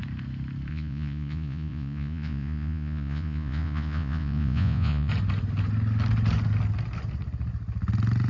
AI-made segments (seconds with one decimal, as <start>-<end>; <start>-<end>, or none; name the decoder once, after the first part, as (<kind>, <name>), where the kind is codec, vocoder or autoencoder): 0.7-5.1 (vocoder, Vocos)